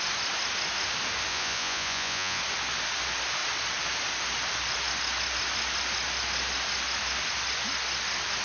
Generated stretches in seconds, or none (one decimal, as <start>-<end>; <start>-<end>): 1.3-2.4